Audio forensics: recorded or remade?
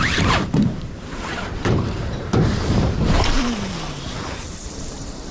remade